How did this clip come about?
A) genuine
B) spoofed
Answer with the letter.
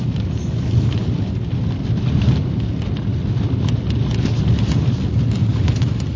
A